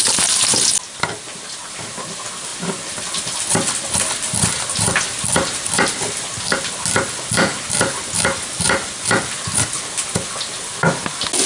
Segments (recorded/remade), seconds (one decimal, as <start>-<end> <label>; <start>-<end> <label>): 0.0-11.5 recorded

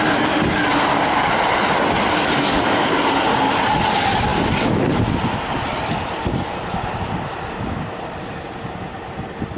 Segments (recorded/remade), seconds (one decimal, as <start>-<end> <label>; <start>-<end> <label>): 0.0-9.6 recorded

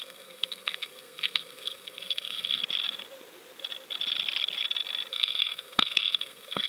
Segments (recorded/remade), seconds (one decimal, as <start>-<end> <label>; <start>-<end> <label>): 0.0-2.6 remade; 2.6-5.1 recorded; 5.1-6.7 remade

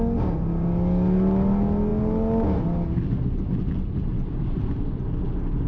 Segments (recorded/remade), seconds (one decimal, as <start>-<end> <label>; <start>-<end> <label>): 0.0-4.1 recorded; 4.1-5.0 remade; 5.0-5.7 recorded

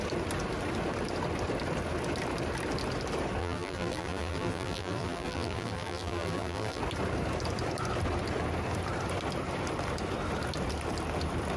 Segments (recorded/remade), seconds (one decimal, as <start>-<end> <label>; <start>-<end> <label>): 0.0-3.4 recorded; 3.4-6.8 remade; 6.8-11.6 recorded